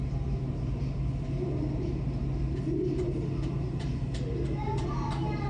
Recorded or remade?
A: recorded